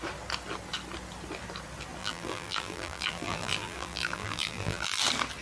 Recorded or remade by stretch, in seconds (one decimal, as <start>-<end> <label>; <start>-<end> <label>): 0.0-2.0 recorded; 2.0-5.0 remade; 5.0-5.4 recorded